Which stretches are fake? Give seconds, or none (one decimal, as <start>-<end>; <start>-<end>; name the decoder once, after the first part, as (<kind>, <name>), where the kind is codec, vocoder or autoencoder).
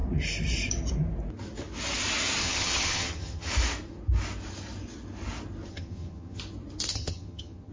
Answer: 2.4-3.5 (vocoder, HiFi-GAN); 5.7-6.4; 6.9-7.7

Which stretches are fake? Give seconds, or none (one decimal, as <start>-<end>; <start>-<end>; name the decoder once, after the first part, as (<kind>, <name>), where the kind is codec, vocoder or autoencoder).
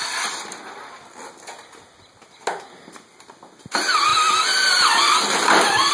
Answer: none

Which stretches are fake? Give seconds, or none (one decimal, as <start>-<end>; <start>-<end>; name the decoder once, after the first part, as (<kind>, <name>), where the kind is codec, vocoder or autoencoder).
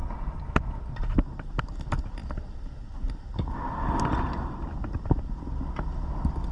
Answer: none